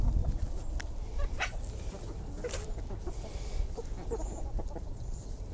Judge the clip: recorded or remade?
recorded